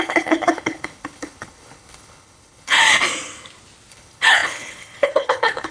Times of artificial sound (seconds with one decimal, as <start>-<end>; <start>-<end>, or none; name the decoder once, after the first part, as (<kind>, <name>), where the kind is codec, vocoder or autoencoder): 0.0-2.8 (codec, HILCodec); 3.9-5.7